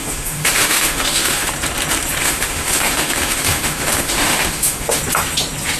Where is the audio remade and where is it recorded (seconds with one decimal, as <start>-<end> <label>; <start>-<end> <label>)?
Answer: 0.0-1.5 remade; 1.5-2.2 recorded; 2.2-5.0 remade; 5.0-5.8 recorded